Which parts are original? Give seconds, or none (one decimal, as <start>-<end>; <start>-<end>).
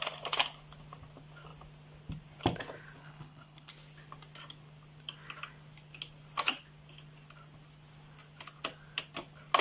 0.0-3.0; 3.7-9.6